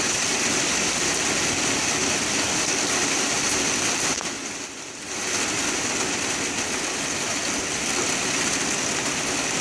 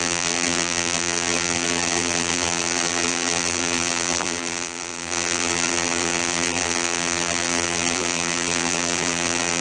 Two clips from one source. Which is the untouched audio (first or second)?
first